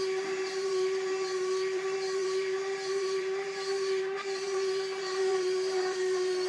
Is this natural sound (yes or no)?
no